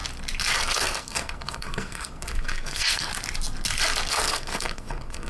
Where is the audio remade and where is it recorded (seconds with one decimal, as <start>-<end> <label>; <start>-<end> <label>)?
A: 0.0-0.6 recorded; 0.6-3.1 remade; 3.1-4.1 recorded; 4.1-5.3 remade